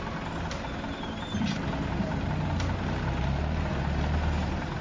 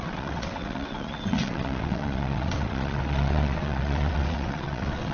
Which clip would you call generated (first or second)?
second